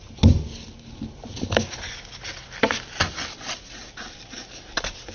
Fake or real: real